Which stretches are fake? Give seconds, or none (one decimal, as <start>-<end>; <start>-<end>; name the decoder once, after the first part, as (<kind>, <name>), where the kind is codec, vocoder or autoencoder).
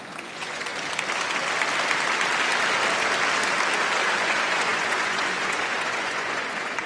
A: 0.0-0.7 (vocoder, Vocos); 4.2-6.9